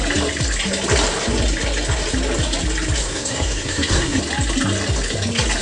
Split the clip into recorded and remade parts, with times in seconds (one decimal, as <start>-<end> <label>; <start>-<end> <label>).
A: 0.0-3.0 recorded; 3.0-4.2 remade; 4.2-5.6 recorded